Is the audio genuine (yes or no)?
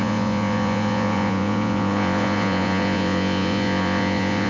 no